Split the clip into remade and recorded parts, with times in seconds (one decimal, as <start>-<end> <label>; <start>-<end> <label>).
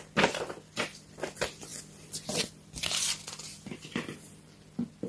0.0-5.1 recorded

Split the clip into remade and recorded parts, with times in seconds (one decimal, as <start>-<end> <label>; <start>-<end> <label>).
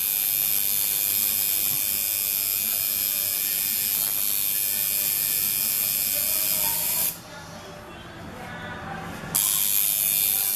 0.0-6.7 recorded; 6.7-9.2 remade; 9.2-10.6 recorded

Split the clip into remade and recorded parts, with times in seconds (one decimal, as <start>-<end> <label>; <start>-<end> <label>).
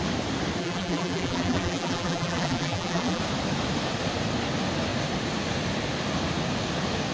0.0-0.6 recorded; 0.6-3.2 remade; 3.2-7.1 recorded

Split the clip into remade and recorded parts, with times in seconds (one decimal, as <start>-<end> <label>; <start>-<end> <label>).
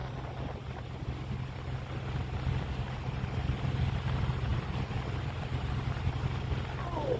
0.0-1.4 remade; 1.4-4.5 recorded; 4.5-5.7 remade; 5.7-7.2 recorded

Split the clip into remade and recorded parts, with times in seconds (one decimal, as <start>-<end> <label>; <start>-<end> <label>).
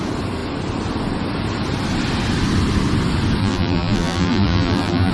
0.0-3.4 recorded; 3.4-5.1 remade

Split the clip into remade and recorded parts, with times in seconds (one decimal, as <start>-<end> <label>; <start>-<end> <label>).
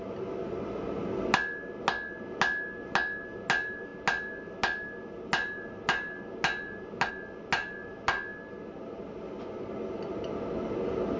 0.0-11.2 recorded